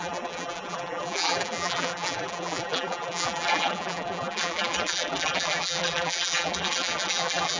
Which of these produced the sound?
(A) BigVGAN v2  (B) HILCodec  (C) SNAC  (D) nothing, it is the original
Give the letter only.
A